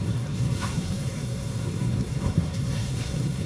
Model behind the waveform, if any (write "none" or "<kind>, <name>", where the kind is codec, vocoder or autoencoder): codec, SNAC